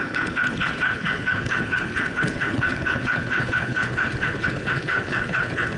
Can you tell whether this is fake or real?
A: fake